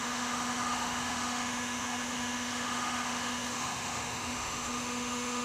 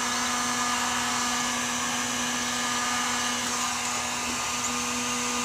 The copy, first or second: first